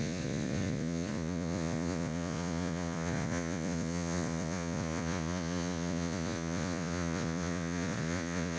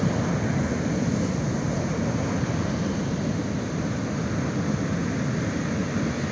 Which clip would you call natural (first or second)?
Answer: second